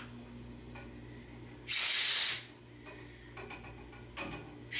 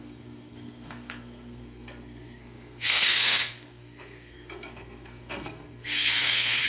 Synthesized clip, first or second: second